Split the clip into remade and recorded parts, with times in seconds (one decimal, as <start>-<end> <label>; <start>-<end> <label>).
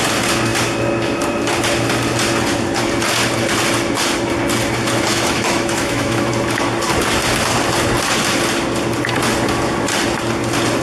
0.0-5.1 recorded; 5.1-6.3 remade; 6.3-10.8 recorded